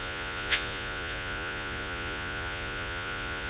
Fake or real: fake